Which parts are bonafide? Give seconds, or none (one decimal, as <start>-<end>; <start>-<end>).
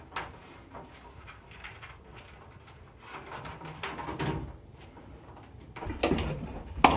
0.0-0.4; 2.0-4.7; 5.5-7.0